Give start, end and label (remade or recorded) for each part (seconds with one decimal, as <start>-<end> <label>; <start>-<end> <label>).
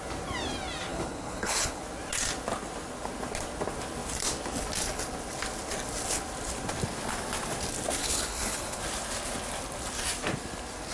0.0-0.9 recorded; 0.9-1.8 remade; 1.8-8.0 recorded; 8.0-8.8 remade; 8.8-10.9 recorded